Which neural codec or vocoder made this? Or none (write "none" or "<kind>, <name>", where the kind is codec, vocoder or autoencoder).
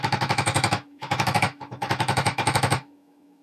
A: autoencoder, DAC-VAE